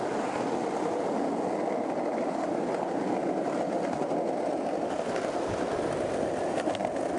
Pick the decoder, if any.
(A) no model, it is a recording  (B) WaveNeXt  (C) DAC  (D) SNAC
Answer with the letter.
A